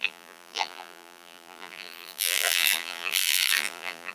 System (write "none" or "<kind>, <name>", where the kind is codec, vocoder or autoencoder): vocoder, BigVGAN v2